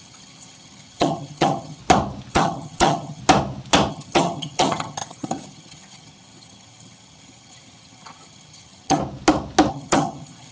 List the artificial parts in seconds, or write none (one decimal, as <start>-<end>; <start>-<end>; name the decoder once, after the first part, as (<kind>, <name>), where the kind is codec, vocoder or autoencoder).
0.0-1.8 (vocoder, HiFi-GAN); 2.3-3.2; 3.9-9.0; 9.7-10.5

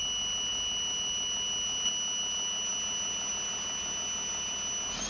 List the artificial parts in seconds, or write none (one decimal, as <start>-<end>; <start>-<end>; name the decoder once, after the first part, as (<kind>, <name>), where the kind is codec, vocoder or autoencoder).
none

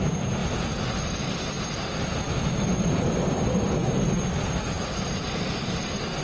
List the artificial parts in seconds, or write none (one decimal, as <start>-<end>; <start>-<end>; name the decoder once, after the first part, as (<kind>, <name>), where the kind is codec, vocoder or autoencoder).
none